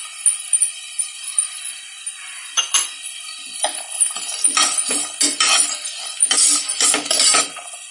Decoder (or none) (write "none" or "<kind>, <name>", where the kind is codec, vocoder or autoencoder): none